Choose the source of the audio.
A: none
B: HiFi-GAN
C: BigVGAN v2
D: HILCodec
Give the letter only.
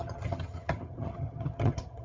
B